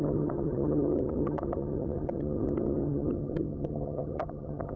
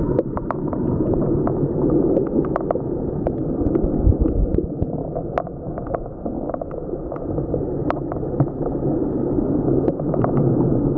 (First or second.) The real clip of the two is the second